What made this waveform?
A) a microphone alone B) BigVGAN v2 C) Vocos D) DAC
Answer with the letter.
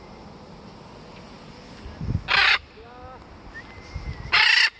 A